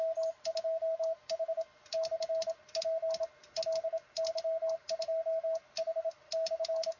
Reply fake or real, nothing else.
real